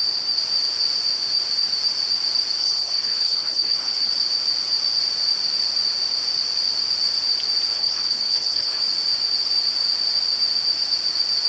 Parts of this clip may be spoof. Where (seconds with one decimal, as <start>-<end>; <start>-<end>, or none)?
2.6-4.1; 7.7-8.8